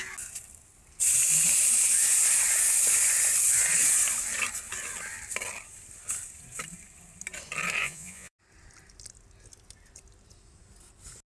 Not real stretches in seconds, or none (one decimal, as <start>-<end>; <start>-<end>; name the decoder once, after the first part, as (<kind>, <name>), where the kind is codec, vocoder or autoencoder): 7.8-8.4 (vocoder, Vocos)